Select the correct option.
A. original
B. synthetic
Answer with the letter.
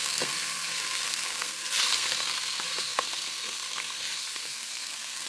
B